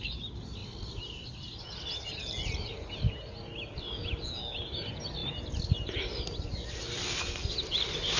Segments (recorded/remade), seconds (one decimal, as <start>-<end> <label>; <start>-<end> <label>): 0.0-8.2 recorded